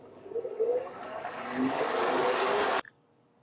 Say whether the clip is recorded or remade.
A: remade